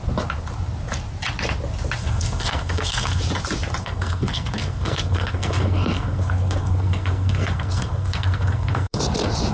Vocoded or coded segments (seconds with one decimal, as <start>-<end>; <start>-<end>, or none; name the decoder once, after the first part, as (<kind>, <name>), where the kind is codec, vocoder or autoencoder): 2.0-3.2 (codec, SNAC); 3.8-9.0